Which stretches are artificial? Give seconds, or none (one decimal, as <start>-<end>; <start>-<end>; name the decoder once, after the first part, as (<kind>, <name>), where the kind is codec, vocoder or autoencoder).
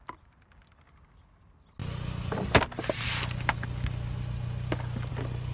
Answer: none